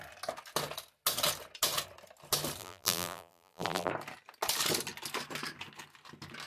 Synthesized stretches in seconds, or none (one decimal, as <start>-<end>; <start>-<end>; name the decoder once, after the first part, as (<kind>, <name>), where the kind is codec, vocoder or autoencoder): 2.6-3.9 (vocoder, BigVGAN v2)